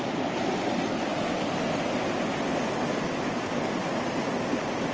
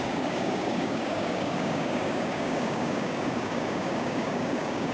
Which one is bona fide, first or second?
first